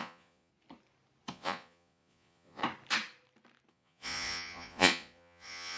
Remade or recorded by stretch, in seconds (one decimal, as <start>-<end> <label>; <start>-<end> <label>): 0.0-0.5 remade; 0.5-1.3 recorded; 1.3-2.6 remade; 2.6-3.7 recorded; 3.7-5.8 remade